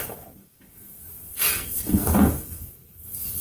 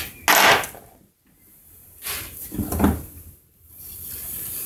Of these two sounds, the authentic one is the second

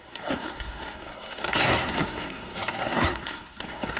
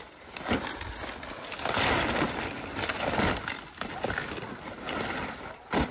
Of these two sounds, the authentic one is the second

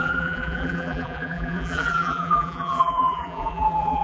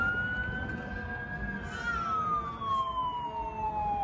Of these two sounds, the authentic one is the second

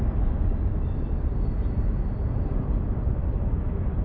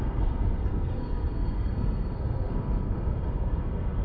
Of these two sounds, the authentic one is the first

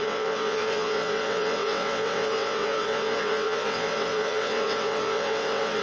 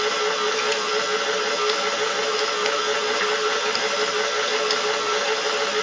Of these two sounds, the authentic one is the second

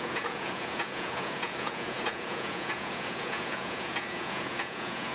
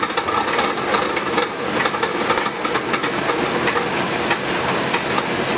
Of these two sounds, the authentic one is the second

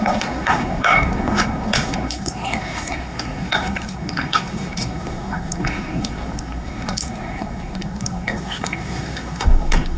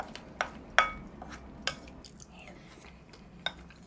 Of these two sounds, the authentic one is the second